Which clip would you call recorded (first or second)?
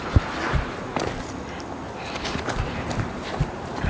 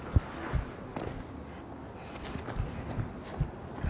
second